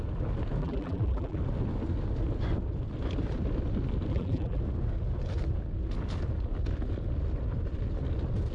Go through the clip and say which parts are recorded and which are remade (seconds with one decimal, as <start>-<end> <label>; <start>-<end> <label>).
0.0-0.6 recorded; 0.6-1.4 remade; 1.4-4.1 recorded; 4.1-4.6 remade; 4.6-8.5 recorded